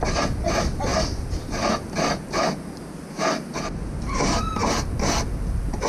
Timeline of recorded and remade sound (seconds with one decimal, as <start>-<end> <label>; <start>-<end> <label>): 0.0-5.9 recorded